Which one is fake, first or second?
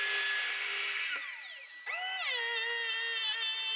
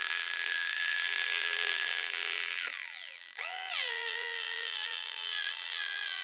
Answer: second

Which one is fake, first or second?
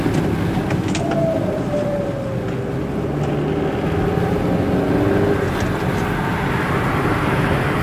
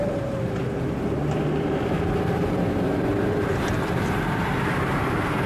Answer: second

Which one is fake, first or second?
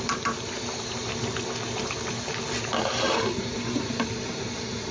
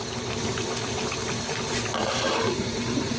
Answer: second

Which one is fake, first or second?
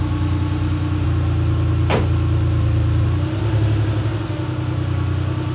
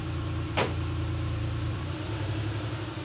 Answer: second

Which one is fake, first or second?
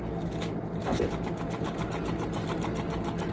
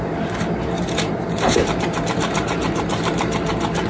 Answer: second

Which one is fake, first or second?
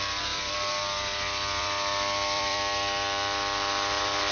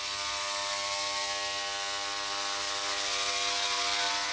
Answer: first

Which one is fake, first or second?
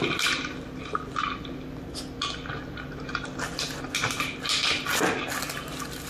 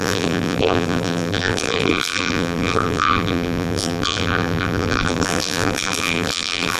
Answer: second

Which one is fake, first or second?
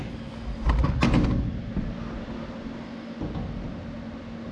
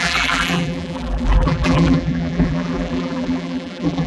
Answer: second